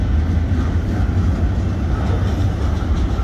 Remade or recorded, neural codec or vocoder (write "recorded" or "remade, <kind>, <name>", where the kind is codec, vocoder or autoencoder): recorded